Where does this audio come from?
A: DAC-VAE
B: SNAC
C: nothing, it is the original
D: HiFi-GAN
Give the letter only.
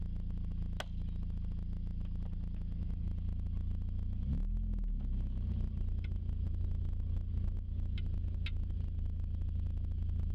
C